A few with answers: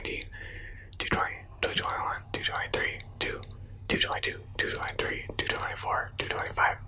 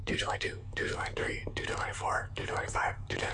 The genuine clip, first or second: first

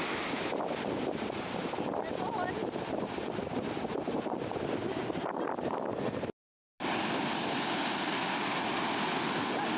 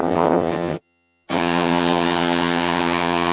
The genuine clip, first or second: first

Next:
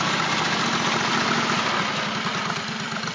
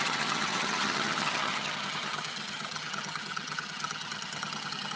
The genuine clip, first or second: first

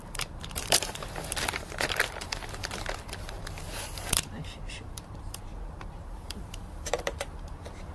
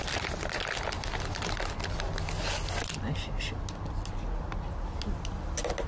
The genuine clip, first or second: second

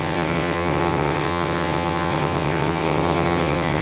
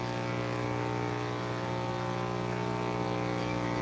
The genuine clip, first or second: second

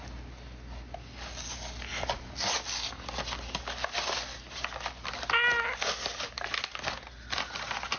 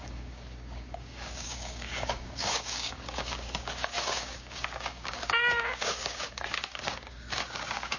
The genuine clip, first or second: first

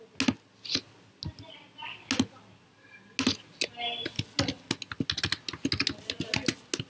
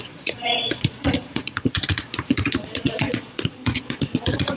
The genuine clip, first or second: first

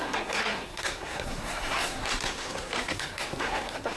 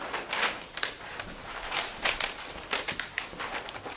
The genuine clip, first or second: second